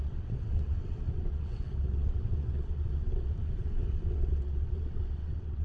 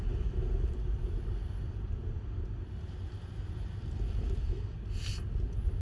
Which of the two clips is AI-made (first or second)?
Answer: first